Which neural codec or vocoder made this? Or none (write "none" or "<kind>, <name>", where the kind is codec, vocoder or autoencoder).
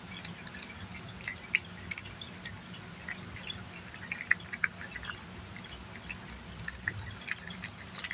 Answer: none